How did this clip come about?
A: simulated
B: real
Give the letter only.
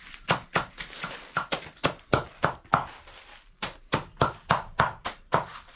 B